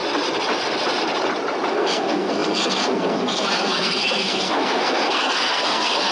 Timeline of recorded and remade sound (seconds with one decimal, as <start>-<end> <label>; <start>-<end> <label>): 0.0-1.7 recorded; 1.7-6.1 remade